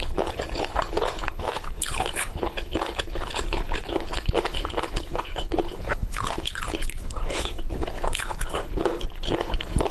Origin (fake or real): fake